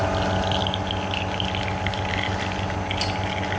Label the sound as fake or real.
real